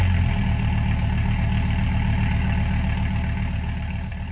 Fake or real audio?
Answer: real